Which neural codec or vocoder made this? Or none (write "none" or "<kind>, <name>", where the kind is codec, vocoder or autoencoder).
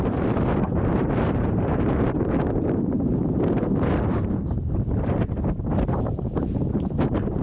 vocoder, BigVGAN v2